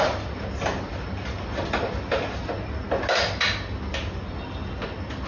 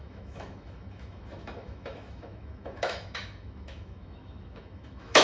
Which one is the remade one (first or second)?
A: second